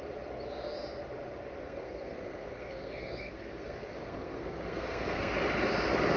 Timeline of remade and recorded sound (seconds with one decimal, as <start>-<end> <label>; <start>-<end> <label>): 0.0-1.6 recorded; 1.6-5.3 remade; 5.3-6.2 recorded